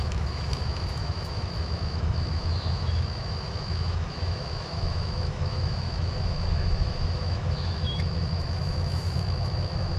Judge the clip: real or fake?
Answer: fake